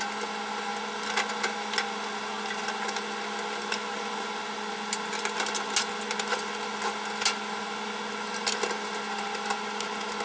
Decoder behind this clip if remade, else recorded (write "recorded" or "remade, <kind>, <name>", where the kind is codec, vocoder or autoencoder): recorded